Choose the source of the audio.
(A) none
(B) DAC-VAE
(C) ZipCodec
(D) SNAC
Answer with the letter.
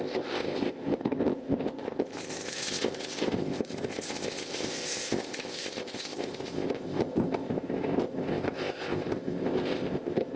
C